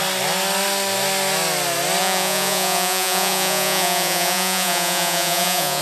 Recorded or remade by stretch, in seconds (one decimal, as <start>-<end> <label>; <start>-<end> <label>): 0.0-2.0 recorded; 2.0-5.8 remade